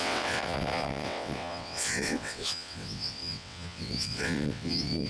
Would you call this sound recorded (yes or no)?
no